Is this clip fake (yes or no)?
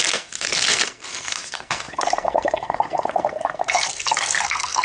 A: yes